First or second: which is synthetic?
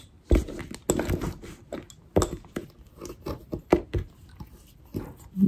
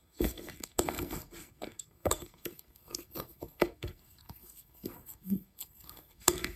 second